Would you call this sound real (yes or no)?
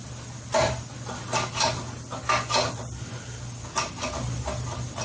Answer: yes